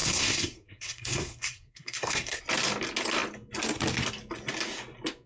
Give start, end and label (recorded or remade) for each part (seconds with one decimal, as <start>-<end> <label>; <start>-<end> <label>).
0.0-2.4 remade; 2.4-5.3 recorded